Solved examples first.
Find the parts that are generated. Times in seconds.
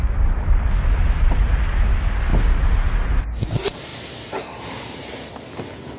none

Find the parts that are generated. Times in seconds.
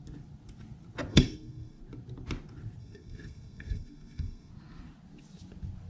1.1-1.8 (codec, SNAC); 2.8-4.5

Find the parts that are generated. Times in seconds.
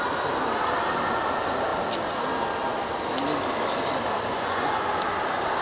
4.3-4.9 (vocoder, Vocos)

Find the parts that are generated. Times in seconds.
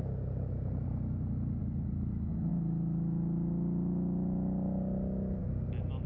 1.6-2.1 (vocoder, BigVGAN v2)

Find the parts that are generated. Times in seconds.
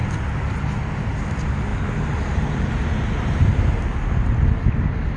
none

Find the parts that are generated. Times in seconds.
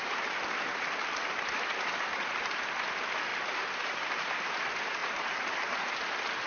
3.3-4.3 (vocoder, BigVGAN v2); 5.0-5.7